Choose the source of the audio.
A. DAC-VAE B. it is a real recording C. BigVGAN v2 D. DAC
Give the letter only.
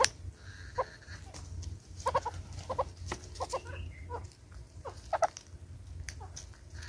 B